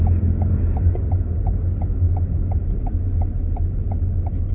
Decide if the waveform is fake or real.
real